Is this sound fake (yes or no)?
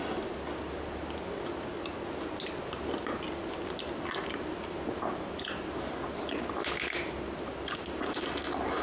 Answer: no